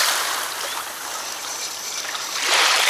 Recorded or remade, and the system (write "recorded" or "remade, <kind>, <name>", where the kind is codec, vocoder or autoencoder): recorded